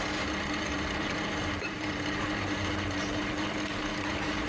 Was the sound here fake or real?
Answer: fake